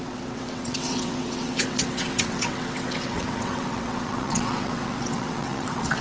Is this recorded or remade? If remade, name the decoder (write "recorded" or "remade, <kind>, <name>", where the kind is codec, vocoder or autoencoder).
remade, vocoder, WaveNeXt